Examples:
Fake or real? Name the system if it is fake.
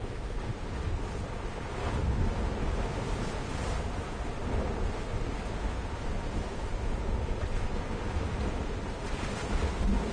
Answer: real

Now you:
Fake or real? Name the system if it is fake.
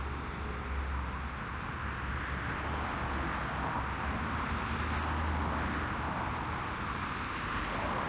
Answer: real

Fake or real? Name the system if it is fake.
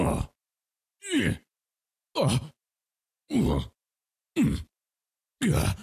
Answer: real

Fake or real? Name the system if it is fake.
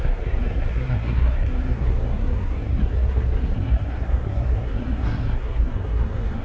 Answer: fake, codec, SNAC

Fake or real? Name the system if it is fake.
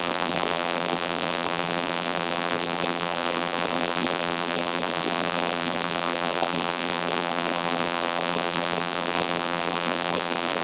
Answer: fake, vocoder, BigVGAN v2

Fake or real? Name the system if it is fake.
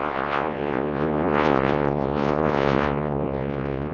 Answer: fake, vocoder, Vocos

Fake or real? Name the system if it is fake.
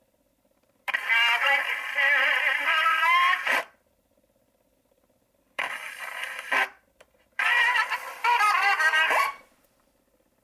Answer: fake, vocoder, BigVGAN v2